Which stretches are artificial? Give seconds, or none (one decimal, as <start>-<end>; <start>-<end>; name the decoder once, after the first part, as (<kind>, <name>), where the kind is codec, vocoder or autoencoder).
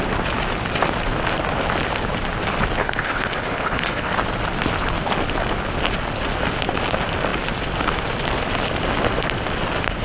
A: 2.8-4.1 (codec, HILCodec)